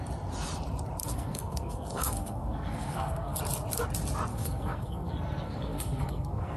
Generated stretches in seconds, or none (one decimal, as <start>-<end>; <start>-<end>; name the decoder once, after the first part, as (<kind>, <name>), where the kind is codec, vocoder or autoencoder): 1.0-3.4 (codec, SNAC); 4.3-6.6